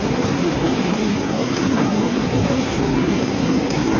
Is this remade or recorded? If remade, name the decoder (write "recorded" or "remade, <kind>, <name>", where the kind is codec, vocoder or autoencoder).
remade, codec, SNAC